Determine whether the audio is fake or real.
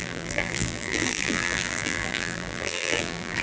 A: fake